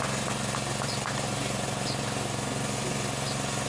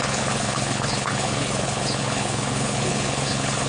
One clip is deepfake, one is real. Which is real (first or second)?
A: first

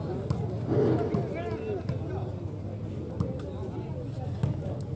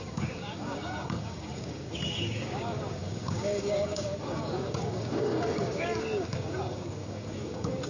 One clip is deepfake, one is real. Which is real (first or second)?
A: first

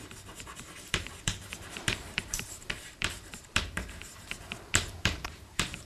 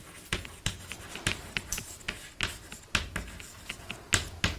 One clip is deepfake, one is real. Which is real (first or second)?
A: second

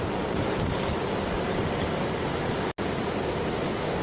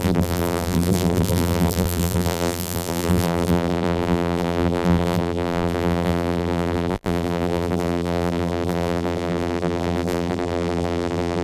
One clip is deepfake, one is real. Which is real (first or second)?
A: first